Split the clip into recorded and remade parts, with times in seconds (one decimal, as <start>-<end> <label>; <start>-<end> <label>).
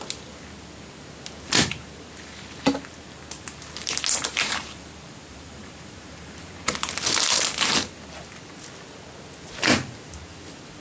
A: 0.0-4.3 recorded; 4.3-6.7 remade; 6.7-10.8 recorded